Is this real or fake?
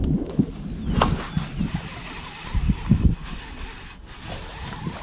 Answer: real